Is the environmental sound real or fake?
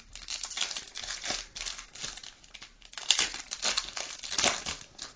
real